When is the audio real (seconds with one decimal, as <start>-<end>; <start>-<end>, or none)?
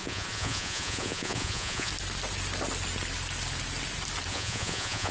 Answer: 1.9-4.3